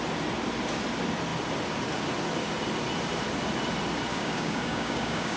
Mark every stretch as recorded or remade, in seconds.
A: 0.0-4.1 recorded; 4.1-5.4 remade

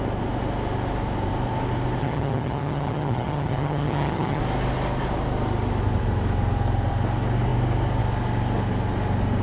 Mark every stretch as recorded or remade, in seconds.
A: 0.0-2.0 recorded; 2.0-4.4 remade; 4.4-9.4 recorded

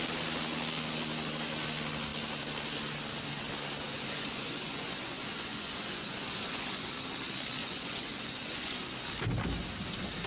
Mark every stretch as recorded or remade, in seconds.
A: 0.0-3.9 recorded; 3.9-6.9 remade; 6.9-7.6 recorded; 7.6-8.9 remade; 8.9-10.3 recorded